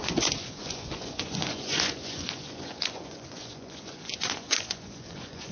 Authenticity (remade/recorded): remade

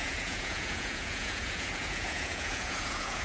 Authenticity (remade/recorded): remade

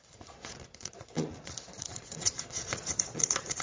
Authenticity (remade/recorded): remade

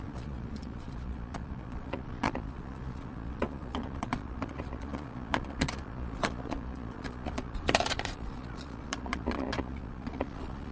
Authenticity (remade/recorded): remade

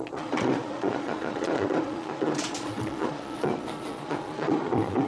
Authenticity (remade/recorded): remade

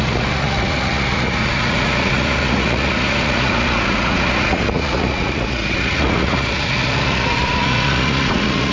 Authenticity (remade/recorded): remade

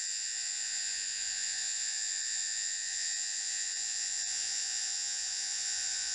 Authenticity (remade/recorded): remade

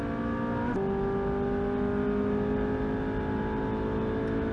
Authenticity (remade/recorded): recorded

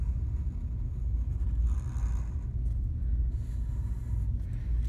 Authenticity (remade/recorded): recorded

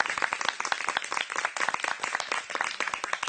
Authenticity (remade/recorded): recorded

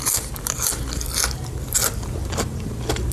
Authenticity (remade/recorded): recorded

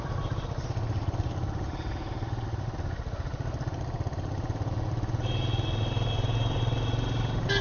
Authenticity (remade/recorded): recorded